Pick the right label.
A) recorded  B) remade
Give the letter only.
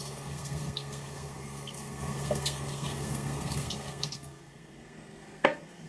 B